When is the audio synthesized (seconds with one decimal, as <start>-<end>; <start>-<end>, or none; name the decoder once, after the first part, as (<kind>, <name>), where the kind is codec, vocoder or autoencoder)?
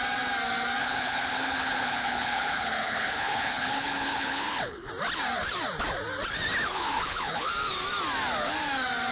0.8-4.9 (codec, HILCodec); 6.7-7.5